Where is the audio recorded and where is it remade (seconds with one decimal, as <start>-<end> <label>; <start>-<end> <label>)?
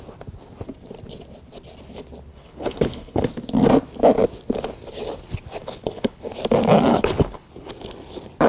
0.0-2.3 recorded; 2.3-3.2 remade; 3.2-5.6 recorded; 5.6-6.2 remade; 6.2-6.9 recorded; 6.9-7.5 remade; 7.5-8.5 recorded